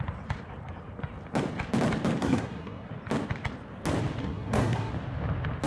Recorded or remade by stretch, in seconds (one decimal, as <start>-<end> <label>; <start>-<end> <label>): 0.0-2.2 recorded; 2.2-2.9 remade; 2.9-4.2 recorded; 4.2-4.9 remade; 4.9-5.7 recorded